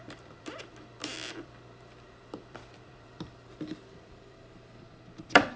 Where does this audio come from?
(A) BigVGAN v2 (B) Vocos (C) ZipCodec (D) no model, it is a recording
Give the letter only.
A